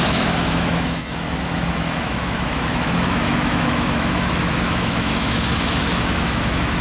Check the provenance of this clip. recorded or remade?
remade